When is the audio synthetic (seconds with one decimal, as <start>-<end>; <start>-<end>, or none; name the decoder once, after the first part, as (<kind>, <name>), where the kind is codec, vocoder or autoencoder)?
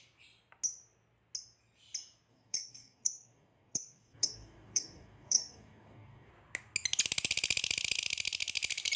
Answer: 2.3-6.3 (codec, DAC)